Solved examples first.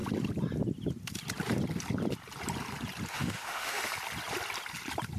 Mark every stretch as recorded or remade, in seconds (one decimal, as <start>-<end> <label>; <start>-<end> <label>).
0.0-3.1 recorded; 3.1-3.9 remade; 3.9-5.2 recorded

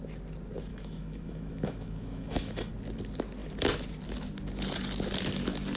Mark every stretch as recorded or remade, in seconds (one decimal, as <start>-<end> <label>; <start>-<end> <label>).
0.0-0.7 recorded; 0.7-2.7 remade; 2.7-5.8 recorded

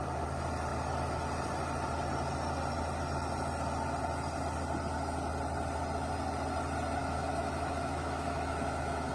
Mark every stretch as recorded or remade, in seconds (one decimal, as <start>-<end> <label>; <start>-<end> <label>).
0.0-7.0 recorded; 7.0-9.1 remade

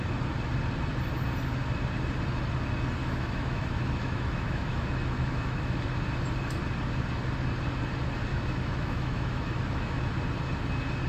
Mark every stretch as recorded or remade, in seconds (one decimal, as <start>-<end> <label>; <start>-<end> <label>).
0.0-3.0 recorded; 3.0-5.8 remade; 5.8-8.3 recorded; 8.3-10.0 remade; 10.0-11.1 recorded

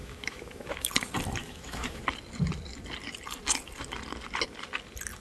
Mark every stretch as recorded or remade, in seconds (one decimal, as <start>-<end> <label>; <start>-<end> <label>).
0.0-0.9 remade; 0.9-1.4 recorded; 1.4-2.0 remade; 2.0-5.2 recorded